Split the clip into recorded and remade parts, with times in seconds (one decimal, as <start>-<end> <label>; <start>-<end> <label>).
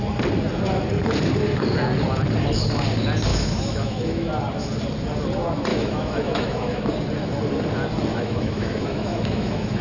0.0-3.3 recorded; 3.3-4.3 remade; 4.3-5.7 recorded; 5.7-6.9 remade; 6.9-8.1 recorded; 8.1-9.8 remade